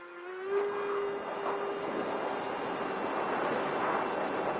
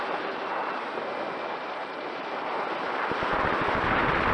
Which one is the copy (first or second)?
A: second